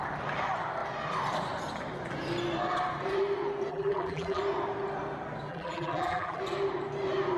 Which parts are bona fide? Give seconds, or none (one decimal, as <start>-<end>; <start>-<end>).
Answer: 0.0-3.7; 4.4-5.5; 6.4-7.4